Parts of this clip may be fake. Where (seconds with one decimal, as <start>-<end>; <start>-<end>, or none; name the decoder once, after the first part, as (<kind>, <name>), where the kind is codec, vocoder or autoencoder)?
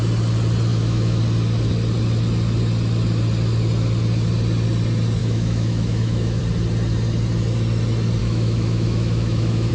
0.7-1.2 (autoencoder, DAC-VAE); 5.2-6.4; 8.2-9.7